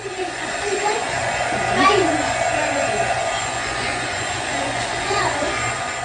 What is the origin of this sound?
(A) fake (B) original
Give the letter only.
A